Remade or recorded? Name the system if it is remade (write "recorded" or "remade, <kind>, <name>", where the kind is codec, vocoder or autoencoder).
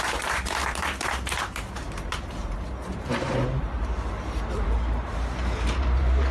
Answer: remade, vocoder, BigVGAN v2